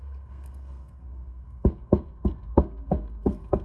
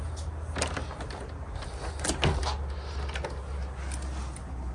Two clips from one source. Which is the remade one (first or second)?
first